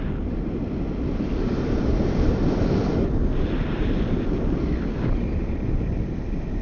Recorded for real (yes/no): yes